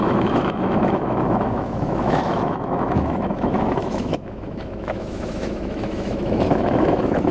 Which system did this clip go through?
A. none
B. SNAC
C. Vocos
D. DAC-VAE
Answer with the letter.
D